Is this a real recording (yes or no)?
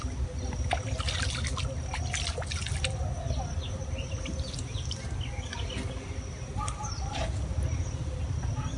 yes